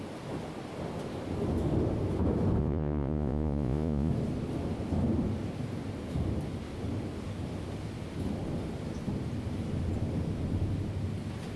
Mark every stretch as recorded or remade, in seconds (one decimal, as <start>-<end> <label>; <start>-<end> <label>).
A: 0.0-2.6 recorded; 2.6-4.1 remade; 4.1-11.6 recorded